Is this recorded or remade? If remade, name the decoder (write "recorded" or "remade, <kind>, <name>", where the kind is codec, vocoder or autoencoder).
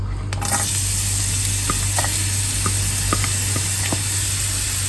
recorded